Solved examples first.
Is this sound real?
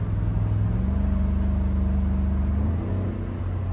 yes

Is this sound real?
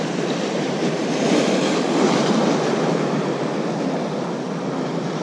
yes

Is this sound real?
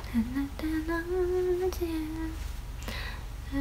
yes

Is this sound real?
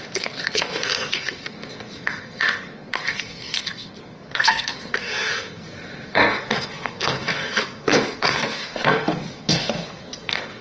no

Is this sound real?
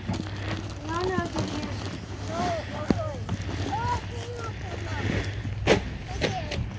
yes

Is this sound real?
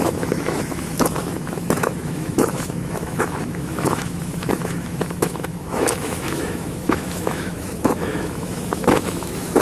no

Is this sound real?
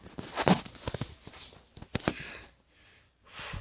yes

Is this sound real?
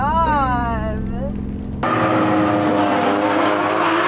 yes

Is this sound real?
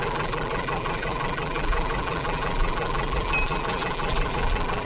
no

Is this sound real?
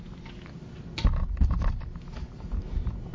yes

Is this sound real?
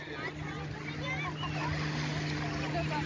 yes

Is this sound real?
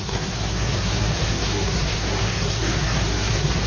no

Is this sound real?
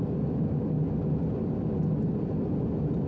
yes